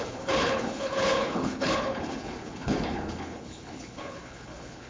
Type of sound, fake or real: fake